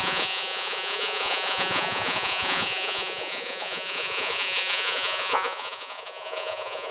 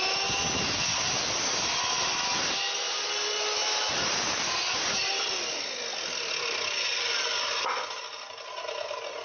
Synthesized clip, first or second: first